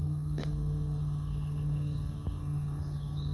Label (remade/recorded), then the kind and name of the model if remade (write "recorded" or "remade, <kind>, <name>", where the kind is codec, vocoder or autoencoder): remade, codec, SNAC